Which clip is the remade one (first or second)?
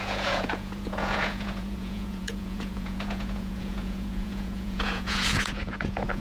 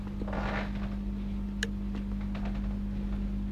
first